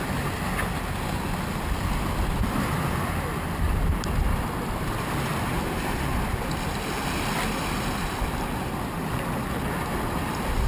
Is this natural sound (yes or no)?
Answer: yes